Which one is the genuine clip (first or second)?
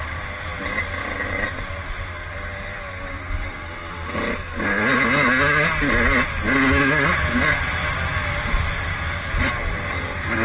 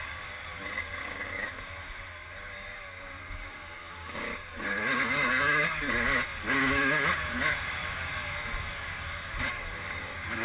first